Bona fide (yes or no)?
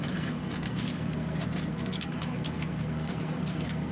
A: no